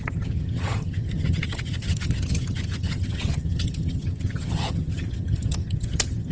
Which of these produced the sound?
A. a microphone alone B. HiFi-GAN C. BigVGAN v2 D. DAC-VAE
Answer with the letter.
B